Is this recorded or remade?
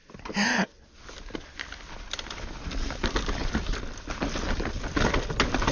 recorded